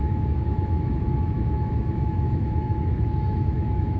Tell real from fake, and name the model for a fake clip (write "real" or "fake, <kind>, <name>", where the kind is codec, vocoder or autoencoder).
fake, autoencoder, DAC-VAE